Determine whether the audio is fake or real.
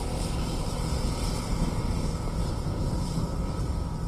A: fake